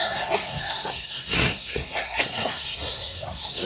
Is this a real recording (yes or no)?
no